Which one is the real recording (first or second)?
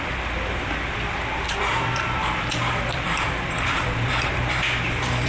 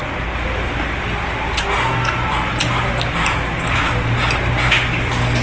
second